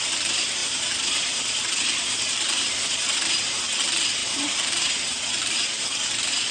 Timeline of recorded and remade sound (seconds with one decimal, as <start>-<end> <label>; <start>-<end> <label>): 0.0-0.6 recorded; 0.6-3.6 remade; 3.6-4.2 recorded; 4.2-5.2 remade; 5.2-6.5 recorded